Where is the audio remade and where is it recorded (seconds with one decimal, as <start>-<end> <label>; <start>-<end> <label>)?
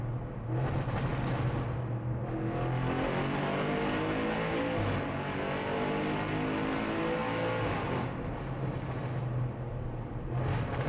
0.0-10.9 recorded